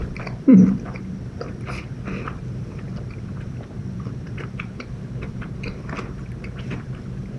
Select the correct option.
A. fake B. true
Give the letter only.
A